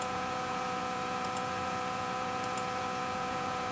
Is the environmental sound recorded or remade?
remade